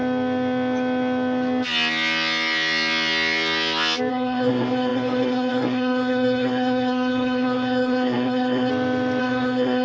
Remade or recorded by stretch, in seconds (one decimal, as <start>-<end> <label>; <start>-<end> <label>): 0.0-4.1 recorded; 4.1-8.7 remade; 8.7-9.2 recorded; 9.2-9.8 remade